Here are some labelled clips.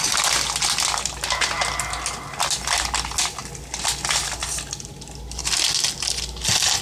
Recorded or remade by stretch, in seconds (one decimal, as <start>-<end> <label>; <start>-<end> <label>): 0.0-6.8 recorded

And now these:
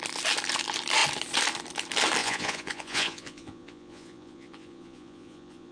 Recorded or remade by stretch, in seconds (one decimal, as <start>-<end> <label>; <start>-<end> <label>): 0.0-2.2 recorded; 2.2-5.7 remade

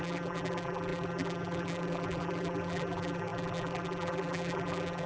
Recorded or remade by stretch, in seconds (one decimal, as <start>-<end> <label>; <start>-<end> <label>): 0.0-5.1 remade